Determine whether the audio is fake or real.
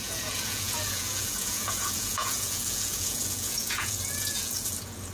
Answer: fake